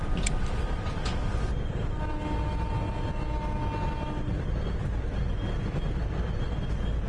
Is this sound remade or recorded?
recorded